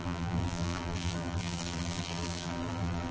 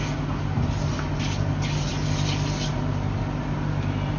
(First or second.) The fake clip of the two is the first